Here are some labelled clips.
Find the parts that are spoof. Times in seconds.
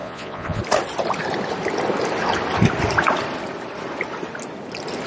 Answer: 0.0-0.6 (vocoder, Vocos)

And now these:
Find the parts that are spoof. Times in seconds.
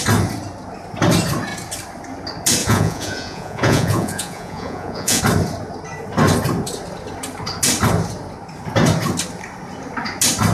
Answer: 2.6-5.2 (vocoder, Vocos)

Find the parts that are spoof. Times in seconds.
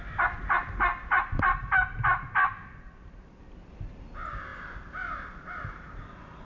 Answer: none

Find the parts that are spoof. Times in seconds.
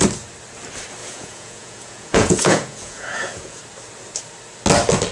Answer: 1.0-3.6 (vocoder, Vocos)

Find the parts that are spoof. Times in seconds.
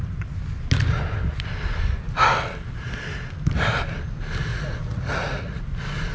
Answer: 4.5-5.6 (vocoder, Vocos)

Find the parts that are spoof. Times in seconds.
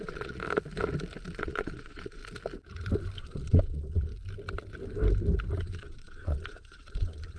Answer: 0.0-0.4 (vocoder, Vocos); 1.4-2.2; 3.2-4.1; 5.5-7.4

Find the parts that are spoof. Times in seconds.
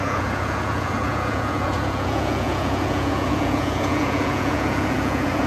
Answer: 0.0-5.5 (vocoder, Vocos)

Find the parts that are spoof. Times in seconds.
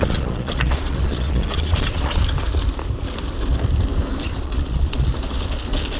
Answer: 0.0-2.2 (vocoder, Vocos); 4.4-5.1